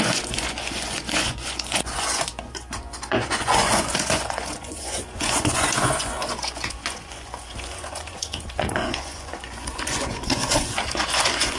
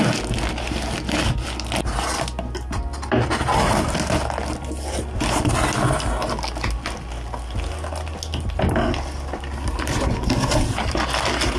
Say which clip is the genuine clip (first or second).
second